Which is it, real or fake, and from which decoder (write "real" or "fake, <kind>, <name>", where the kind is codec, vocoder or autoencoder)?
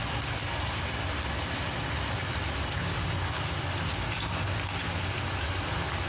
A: real